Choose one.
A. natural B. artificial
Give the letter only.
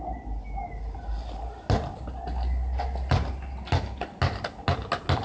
A